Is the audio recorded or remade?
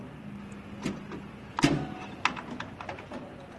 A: recorded